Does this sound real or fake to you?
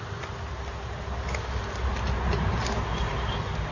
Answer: real